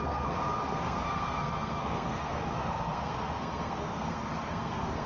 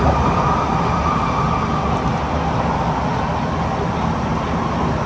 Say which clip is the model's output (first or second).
first